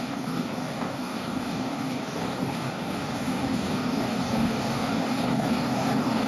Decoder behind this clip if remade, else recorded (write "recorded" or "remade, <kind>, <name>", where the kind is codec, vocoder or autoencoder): remade, codec, DAC